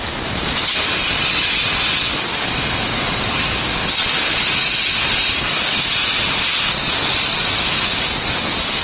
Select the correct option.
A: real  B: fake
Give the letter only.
A